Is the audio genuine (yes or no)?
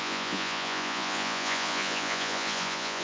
no